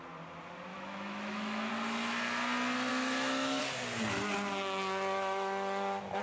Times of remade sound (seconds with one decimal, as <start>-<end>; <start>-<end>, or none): 0.7-1.7; 2.9-3.6; 5.2-6.2